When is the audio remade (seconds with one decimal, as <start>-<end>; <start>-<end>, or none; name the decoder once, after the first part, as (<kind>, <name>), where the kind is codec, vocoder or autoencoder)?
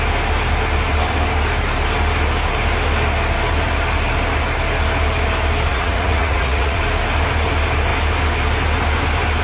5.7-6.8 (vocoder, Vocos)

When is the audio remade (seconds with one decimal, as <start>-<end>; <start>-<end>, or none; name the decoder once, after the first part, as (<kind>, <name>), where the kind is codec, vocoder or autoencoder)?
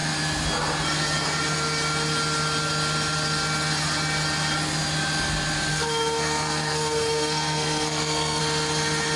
5.7-8.4 (codec, SNAC)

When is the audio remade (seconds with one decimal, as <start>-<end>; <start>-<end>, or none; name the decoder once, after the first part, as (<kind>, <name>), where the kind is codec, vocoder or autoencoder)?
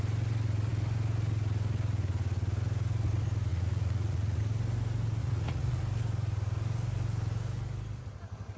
3.5-4.4 (vocoder, Vocos); 5.2-5.8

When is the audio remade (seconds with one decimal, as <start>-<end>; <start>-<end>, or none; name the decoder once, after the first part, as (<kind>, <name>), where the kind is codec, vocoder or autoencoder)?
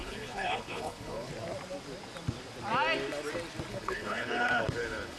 0.0-1.3 (codec, HILCodec); 3.7-5.2